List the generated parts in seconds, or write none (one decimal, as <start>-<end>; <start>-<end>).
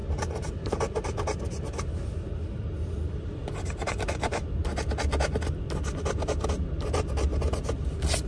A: 0.0-0.8; 3.8-4.7; 7.3-8.3